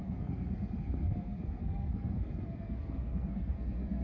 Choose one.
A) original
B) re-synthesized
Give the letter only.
B